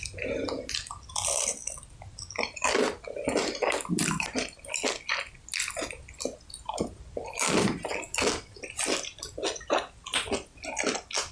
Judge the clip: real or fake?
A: real